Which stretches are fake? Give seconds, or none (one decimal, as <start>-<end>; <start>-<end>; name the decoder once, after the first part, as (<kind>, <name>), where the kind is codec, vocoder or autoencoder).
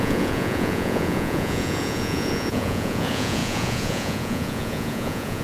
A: 0.0-5.4 (vocoder, Vocos)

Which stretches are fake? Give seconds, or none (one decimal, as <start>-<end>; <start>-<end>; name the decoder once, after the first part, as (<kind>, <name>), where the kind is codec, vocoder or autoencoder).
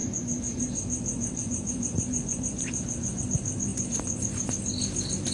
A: 0.0-3.2 (vocoder, Vocos); 3.7-4.5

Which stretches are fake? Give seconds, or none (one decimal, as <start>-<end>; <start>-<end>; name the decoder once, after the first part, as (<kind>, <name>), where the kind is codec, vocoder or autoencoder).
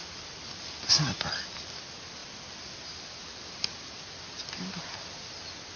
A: none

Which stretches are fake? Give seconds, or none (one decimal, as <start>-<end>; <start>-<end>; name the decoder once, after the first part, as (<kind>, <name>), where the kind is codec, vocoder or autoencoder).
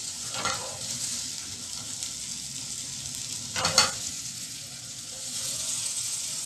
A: 0.0-1.3 (vocoder, Vocos); 3.8-6.5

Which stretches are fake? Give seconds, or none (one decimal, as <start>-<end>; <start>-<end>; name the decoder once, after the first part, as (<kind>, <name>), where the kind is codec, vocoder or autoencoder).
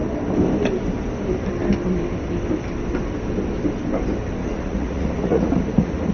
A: 4.4-6.1 (vocoder, Vocos)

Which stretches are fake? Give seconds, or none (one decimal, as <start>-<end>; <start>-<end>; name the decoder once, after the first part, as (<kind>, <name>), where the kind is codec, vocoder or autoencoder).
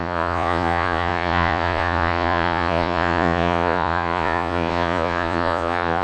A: 0.0-6.0 (vocoder, Vocos)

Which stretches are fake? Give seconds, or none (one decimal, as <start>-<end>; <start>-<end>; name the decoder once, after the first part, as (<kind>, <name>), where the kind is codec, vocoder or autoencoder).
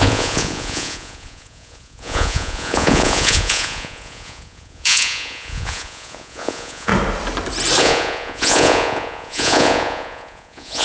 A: 0.0-6.9 (vocoder, Vocos); 7.8-10.8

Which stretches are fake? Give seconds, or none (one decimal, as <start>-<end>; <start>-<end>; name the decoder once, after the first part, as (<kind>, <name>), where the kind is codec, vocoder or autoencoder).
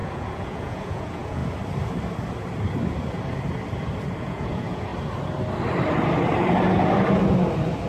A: 0.0-1.4 (vocoder, Vocos); 4.2-4.9